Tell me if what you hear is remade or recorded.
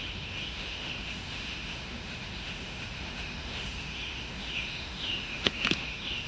remade